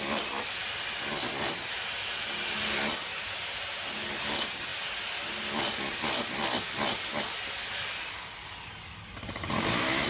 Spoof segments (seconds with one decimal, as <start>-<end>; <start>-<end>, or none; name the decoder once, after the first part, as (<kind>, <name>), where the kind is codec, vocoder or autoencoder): 3.1-4.1 (vocoder, BigVGAN v2)